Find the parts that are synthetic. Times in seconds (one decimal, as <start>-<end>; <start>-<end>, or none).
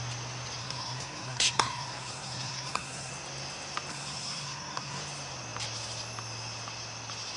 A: 0.6-3.1; 3.9-5.0